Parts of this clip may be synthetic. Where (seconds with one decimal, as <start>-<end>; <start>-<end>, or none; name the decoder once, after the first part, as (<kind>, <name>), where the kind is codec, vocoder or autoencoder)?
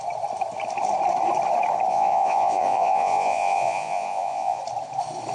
1.9-4.6 (vocoder, Vocos)